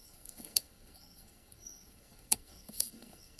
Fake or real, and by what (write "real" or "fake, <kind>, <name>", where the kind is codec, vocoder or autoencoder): fake, codec, SNAC